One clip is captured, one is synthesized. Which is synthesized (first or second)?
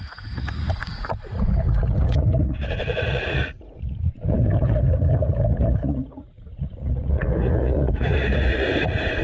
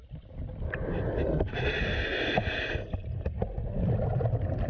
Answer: first